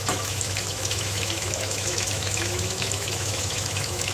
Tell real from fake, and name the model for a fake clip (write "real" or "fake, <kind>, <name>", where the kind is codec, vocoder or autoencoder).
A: fake, autoencoder, DAC-VAE